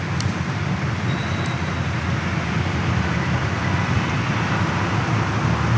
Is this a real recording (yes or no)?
yes